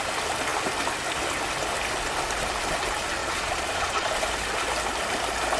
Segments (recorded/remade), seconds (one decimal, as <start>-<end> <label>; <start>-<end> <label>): 0.0-3.2 recorded; 3.2-4.1 remade; 4.1-5.6 recorded